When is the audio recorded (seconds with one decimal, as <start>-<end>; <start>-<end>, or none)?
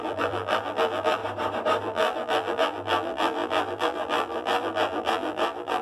1.2-1.8